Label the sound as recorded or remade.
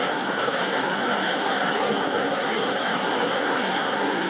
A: remade